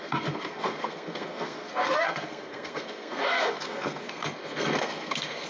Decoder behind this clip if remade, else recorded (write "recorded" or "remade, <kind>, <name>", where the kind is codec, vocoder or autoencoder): remade, codec, SNAC